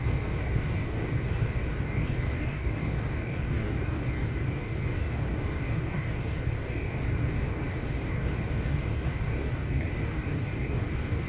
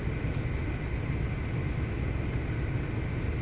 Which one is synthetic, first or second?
first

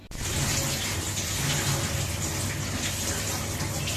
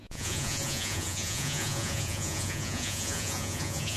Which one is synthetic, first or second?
second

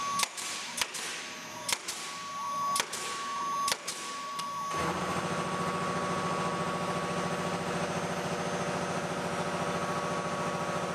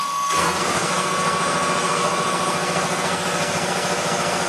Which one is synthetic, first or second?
second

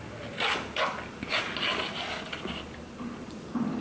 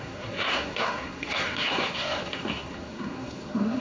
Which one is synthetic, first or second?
second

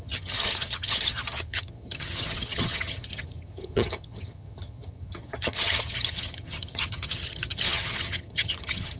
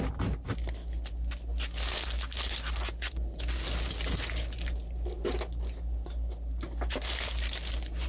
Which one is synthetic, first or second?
first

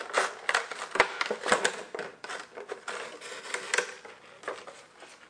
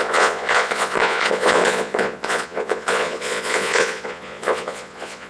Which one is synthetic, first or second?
second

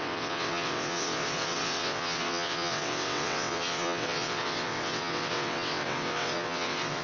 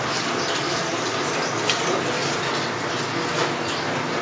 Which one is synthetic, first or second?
first